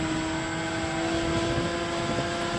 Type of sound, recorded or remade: recorded